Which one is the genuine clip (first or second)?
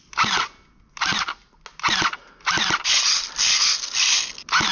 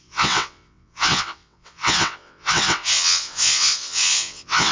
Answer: first